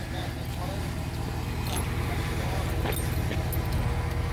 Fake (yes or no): no